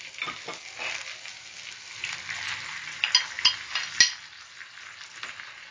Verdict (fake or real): real